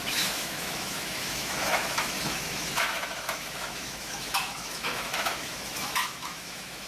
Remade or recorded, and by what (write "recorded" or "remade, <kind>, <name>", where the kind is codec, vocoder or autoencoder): remade, autoencoder, DAC-VAE